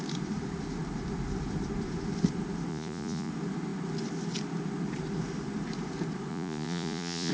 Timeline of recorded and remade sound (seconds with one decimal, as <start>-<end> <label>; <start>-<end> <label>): 0.0-2.7 recorded; 2.7-3.3 remade; 3.3-6.3 recorded; 6.3-7.3 remade